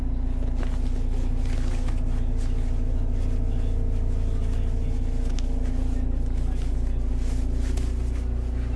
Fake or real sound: real